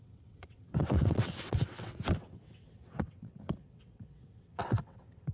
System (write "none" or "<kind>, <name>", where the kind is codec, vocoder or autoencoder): vocoder, WaveNeXt